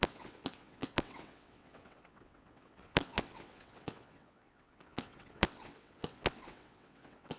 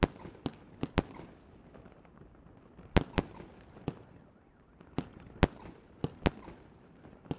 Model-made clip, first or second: first